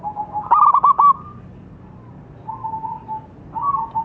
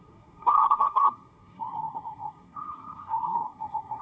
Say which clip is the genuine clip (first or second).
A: first